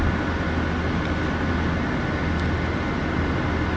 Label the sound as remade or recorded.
recorded